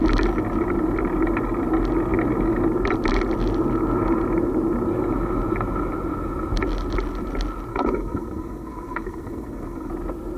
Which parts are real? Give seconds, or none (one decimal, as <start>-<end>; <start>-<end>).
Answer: 0.0-7.7; 9.9-10.4